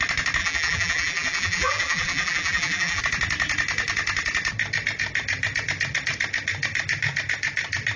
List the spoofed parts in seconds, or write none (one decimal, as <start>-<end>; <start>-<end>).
0.4-3.0